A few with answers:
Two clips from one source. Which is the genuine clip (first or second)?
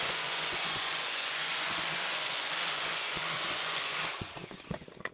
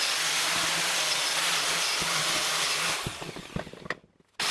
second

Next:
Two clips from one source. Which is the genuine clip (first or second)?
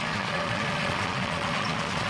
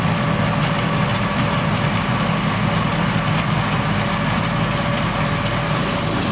second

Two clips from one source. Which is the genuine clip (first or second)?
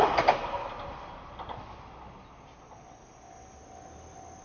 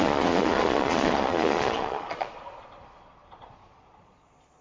first